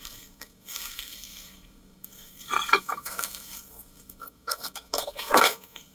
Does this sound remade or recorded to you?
remade